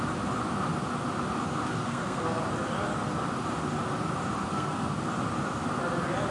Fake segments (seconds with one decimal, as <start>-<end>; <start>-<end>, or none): 1.8-2.4; 4.5-5.0